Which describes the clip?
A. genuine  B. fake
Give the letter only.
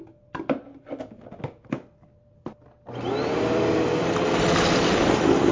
A